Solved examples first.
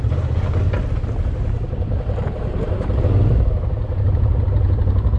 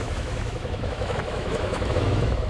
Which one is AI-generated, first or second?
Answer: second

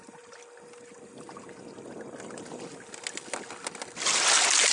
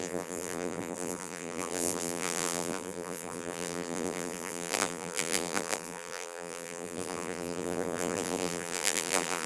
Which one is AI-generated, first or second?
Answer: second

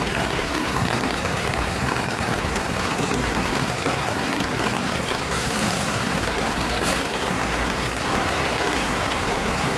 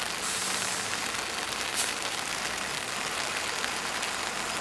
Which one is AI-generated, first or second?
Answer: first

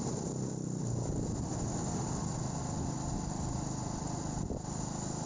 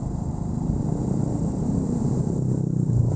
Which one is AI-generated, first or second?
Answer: second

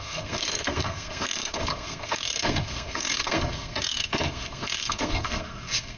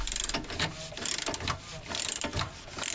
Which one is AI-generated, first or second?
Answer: first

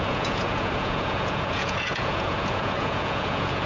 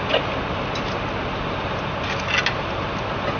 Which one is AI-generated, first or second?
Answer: first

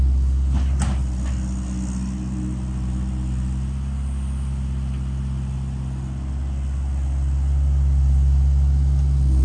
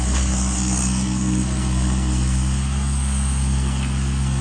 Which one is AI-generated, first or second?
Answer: second